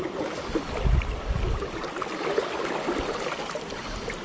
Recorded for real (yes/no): yes